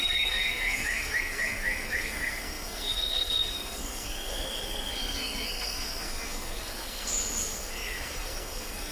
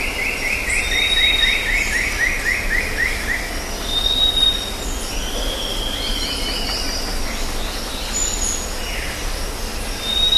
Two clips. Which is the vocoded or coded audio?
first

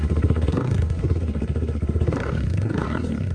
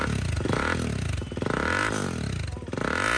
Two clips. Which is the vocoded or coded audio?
first